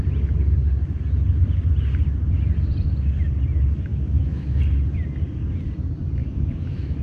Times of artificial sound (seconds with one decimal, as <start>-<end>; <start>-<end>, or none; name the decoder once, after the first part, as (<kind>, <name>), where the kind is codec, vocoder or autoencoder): 3.9-4.6 (autoencoder, DAC-VAE); 6.2-7.0